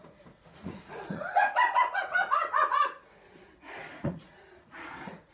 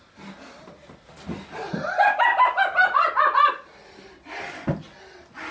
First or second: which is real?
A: second